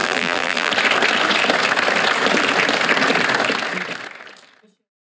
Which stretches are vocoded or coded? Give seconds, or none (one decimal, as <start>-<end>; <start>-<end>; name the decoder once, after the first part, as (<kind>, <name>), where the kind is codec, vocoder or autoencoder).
0.0-0.7 (vocoder, BigVGAN v2)